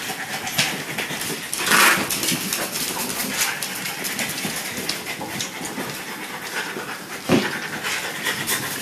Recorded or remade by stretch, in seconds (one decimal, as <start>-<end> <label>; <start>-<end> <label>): 0.0-8.8 recorded